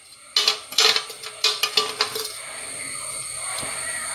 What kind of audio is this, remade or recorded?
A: recorded